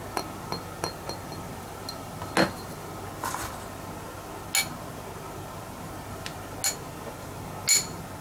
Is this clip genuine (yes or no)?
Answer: yes